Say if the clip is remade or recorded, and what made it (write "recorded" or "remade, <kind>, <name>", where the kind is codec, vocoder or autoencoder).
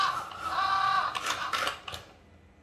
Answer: recorded